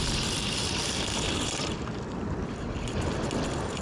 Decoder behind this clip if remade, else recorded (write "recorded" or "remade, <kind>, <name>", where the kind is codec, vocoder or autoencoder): recorded